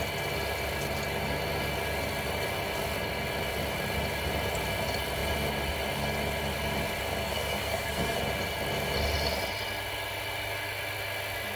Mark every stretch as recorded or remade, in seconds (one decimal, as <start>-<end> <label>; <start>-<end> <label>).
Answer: 0.0-7.2 recorded; 7.2-8.2 remade; 8.2-11.6 recorded